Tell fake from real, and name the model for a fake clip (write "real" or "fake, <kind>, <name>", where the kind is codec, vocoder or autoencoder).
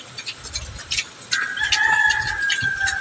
real